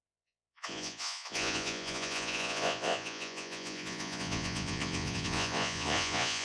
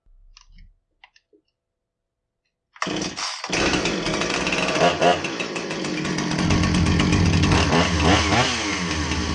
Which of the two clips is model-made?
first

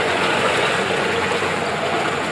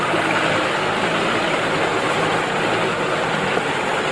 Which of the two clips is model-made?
first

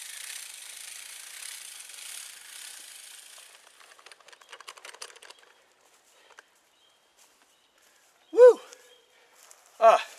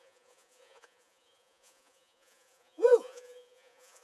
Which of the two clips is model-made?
second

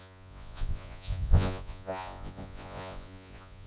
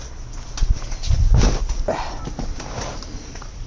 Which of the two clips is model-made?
first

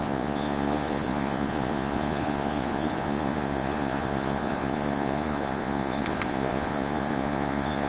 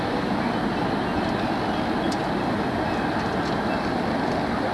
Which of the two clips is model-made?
first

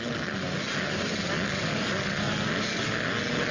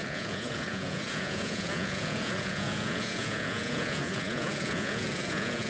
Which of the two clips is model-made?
second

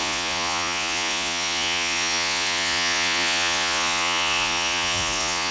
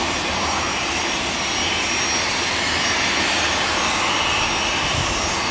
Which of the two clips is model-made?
first